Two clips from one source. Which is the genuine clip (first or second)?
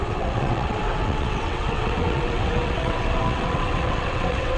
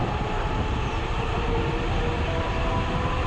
second